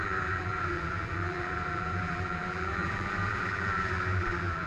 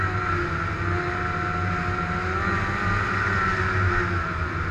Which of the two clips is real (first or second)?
second